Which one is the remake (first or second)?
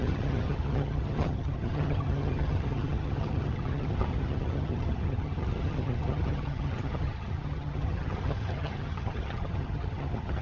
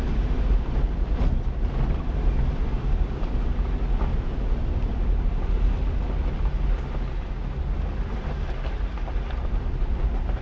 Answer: first